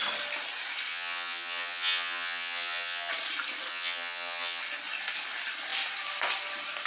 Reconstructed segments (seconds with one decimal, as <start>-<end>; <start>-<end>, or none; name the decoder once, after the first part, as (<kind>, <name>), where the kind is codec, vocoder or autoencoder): 0.9-3.1 (vocoder, HiFi-GAN); 3.7-4.6